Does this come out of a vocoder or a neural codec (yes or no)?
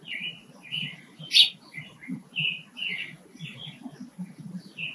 yes